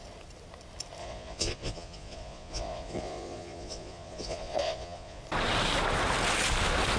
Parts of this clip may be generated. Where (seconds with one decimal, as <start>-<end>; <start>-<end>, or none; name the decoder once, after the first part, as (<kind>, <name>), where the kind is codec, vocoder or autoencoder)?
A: 1.0-5.2 (vocoder, Vocos)